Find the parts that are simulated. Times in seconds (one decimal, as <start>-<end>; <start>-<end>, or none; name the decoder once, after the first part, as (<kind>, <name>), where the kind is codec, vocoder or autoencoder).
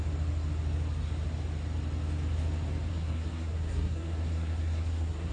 2.9-5.3 (codec, SNAC)